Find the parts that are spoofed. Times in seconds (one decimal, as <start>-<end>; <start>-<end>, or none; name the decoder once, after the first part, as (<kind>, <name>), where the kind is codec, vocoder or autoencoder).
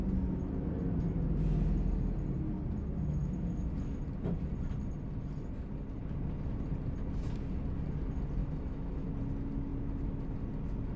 8.4-9.1 (autoencoder, DAC-VAE)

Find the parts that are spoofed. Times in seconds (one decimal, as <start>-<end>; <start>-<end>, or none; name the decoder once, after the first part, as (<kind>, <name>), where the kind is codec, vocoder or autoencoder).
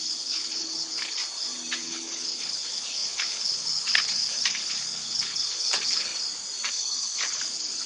0.0-1.2 (codec, HILCodec); 1.8-6.1; 6.7-7.9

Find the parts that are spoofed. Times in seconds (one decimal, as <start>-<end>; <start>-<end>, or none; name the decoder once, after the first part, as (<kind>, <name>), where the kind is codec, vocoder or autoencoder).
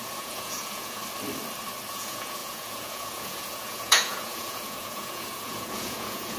0.0-1.0 (vocoder, Vocos); 1.9-6.4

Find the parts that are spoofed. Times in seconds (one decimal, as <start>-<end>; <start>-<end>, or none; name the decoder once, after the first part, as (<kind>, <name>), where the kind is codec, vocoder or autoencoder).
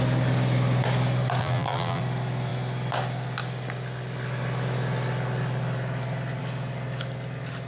1.4-2.0 (vocoder, BigVGAN v2)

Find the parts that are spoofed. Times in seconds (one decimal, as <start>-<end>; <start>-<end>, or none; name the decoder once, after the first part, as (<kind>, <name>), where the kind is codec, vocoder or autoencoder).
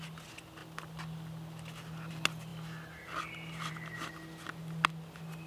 none